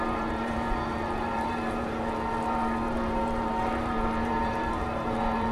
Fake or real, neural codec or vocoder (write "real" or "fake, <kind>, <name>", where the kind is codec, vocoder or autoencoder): fake, vocoder, BigVGAN v2